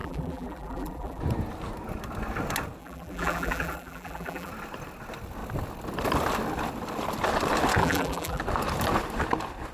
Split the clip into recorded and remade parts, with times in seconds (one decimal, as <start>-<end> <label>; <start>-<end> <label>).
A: 0.0-1.2 remade; 1.2-2.8 recorded; 2.8-4.5 remade; 4.5-7.8 recorded; 7.8-8.4 remade; 8.4-9.7 recorded